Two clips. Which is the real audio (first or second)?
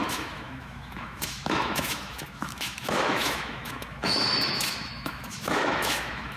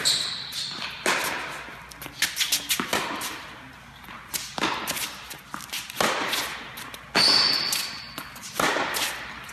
second